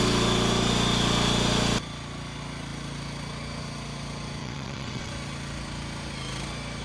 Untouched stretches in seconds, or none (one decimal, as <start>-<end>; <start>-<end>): 0.0-4.4; 5.1-6.8